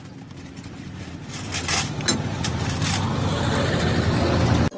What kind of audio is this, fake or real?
real